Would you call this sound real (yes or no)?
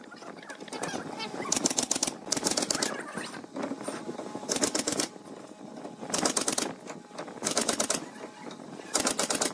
yes